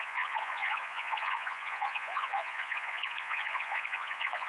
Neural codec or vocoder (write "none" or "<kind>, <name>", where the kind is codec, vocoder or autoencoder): vocoder, Vocos